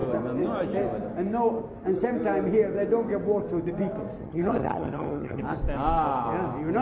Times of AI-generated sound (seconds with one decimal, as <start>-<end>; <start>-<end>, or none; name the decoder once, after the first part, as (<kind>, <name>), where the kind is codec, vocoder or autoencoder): 4.2-5.4 (vocoder, HiFi-GAN)